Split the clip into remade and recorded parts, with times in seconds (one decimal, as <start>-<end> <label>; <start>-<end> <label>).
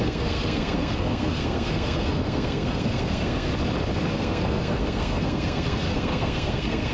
0.0-3.5 remade; 3.5-4.1 recorded; 4.1-6.9 remade